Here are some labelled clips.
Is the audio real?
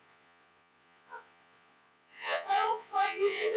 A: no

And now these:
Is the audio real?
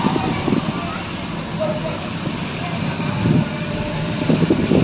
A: yes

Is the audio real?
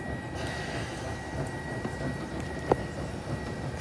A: yes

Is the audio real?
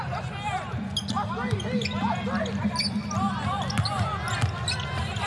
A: yes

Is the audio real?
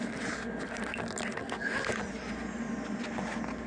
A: yes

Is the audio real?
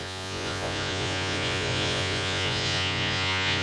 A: no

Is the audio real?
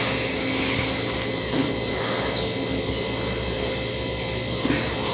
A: yes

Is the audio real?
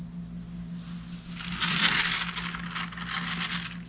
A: yes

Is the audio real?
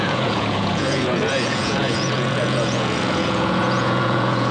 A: no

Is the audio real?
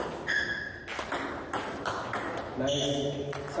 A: yes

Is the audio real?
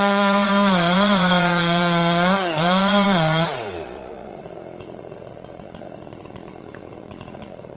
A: no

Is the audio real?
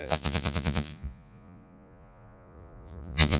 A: no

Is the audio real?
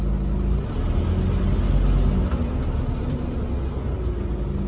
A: yes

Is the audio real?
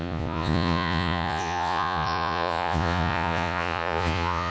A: no